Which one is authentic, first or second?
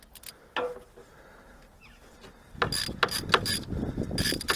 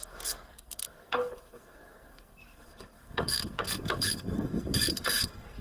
first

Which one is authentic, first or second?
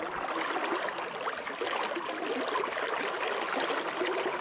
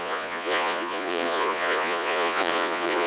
first